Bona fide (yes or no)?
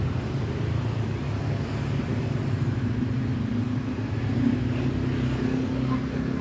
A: yes